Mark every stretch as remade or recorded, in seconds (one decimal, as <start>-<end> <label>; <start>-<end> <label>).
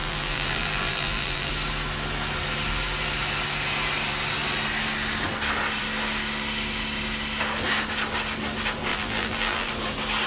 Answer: 0.0-1.5 remade; 1.5-8.9 recorded; 8.9-9.7 remade; 9.7-10.3 recorded